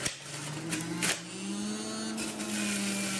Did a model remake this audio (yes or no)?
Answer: no